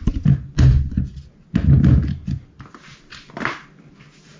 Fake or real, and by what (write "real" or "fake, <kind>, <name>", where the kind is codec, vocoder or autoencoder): real